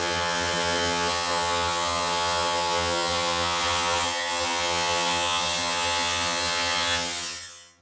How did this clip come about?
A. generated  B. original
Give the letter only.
A